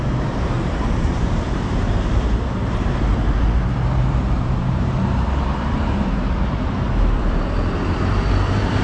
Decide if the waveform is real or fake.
fake